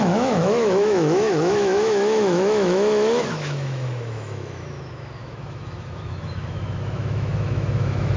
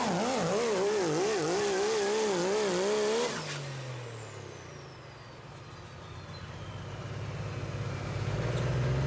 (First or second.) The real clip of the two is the second